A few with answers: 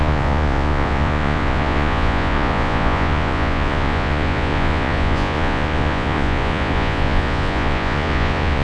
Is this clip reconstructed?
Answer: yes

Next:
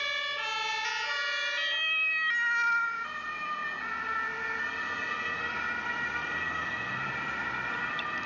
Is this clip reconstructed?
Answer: no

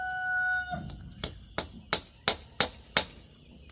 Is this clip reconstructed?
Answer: no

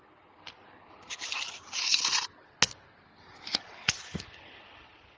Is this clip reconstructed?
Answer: no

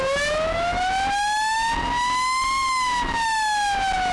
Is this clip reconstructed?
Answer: no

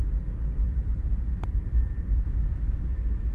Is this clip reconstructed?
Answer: no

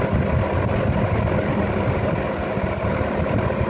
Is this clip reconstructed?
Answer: no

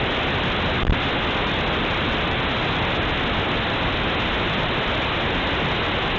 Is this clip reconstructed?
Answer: no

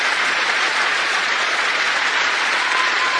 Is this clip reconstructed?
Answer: yes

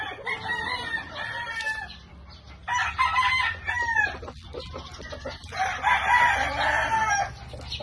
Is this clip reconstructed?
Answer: no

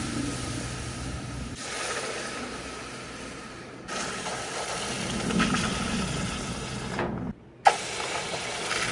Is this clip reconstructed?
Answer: no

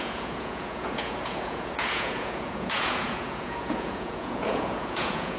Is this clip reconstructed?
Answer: yes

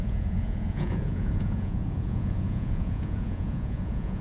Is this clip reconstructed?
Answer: yes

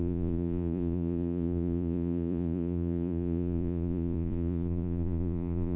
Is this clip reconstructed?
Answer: yes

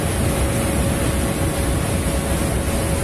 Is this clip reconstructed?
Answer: no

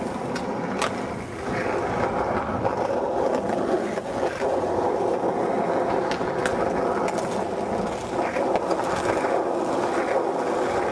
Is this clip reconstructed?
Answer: no